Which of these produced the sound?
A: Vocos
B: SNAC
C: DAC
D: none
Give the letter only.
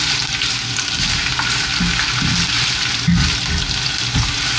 D